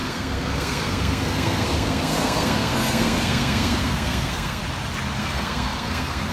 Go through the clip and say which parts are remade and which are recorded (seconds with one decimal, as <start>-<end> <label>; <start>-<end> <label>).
0.0-4.6 remade; 4.6-5.2 recorded; 5.2-6.3 remade